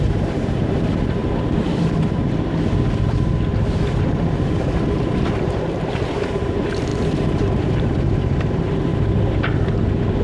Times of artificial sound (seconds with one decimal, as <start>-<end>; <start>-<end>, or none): 0.0-1.2; 4.0-8.9